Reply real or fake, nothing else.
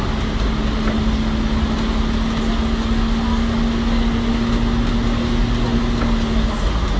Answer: real